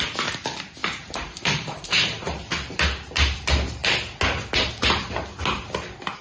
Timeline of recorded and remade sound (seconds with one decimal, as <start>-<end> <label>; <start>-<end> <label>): 0.0-0.8 recorded; 0.8-2.0 remade; 2.0-6.2 recorded